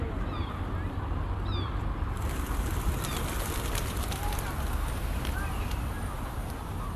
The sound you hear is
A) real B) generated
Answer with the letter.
A